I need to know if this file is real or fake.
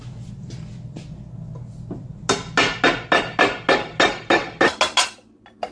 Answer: real